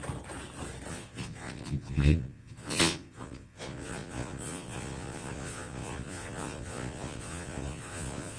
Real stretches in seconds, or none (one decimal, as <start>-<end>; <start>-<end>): 0.0-0.9